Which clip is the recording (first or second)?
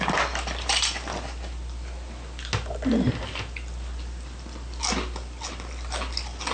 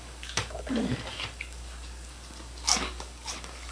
first